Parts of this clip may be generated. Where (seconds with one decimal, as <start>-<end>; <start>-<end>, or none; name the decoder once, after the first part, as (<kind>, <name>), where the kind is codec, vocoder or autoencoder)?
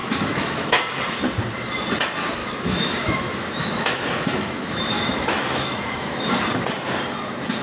0.0-0.8 (autoencoder, DAC-VAE); 2.4-6.3